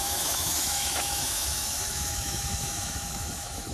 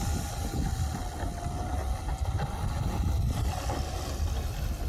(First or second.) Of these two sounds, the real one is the second